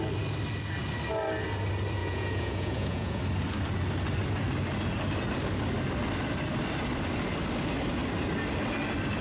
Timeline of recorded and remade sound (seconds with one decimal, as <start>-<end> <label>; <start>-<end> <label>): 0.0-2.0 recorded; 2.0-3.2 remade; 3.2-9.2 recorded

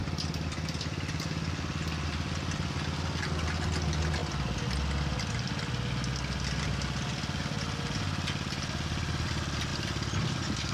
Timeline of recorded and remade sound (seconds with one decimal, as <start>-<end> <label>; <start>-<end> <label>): 0.0-10.7 recorded

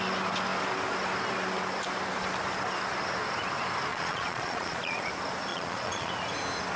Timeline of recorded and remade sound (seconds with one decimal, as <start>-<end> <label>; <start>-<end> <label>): 0.0-3.9 recorded; 3.9-5.1 remade; 5.1-5.5 recorded; 5.5-6.1 remade; 6.1-6.8 recorded

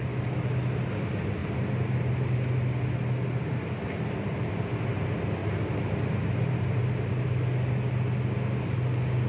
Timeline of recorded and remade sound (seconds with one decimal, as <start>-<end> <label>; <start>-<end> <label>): 0.0-9.3 recorded

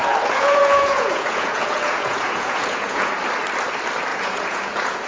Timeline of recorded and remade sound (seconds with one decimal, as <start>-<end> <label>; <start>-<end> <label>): 0.0-3.1 remade; 3.1-4.1 recorded; 4.1-5.1 remade

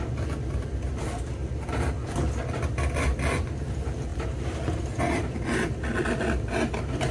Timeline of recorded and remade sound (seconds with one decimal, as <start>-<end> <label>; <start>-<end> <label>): 0.0-7.1 recorded

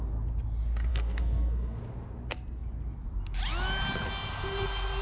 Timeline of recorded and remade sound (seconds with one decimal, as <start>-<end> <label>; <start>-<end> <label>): 0.0-0.9 recorded; 0.9-1.8 remade; 1.8-5.0 recorded